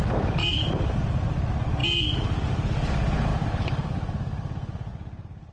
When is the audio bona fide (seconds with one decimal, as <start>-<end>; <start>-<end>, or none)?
0.0-0.4; 1.2-3.3; 4.9-5.5